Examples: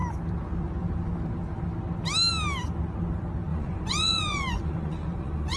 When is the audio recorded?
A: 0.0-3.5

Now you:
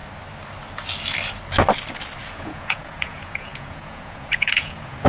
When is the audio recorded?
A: 0.0-2.3

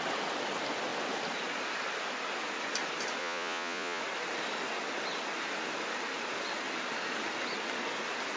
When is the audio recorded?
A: 0.0-3.2; 4.0-8.4

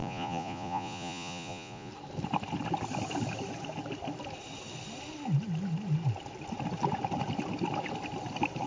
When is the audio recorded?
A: 1.9-8.7

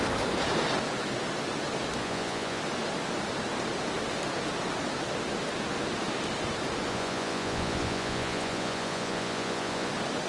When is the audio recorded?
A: 0.0-2.0; 2.6-6.9; 9.9-10.3

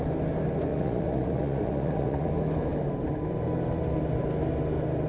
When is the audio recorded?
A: 0.0-0.7; 2.3-5.1

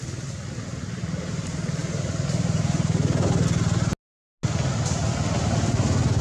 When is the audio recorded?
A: 0.0-6.2